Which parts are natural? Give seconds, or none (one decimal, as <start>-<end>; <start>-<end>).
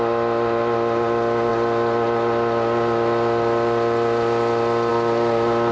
0.0-5.7